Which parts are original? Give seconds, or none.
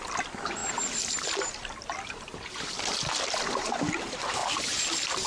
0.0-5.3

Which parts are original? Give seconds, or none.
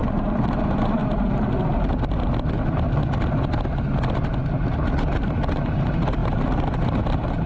1.0-5.5; 6.2-7.5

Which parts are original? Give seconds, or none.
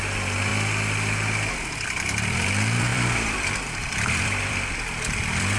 0.5-1.5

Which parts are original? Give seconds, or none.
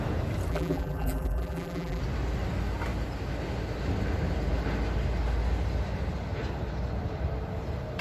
0.0-0.5; 2.0-8.0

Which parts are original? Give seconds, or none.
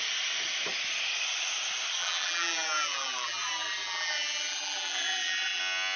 0.0-2.0; 5.6-6.0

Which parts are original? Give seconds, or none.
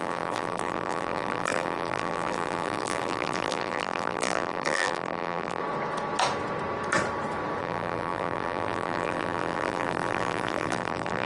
5.6-7.6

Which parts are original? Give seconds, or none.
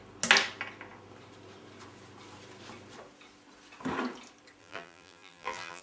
0.0-4.6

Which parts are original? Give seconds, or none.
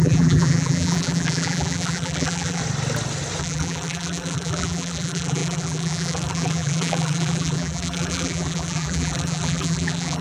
2.6-3.4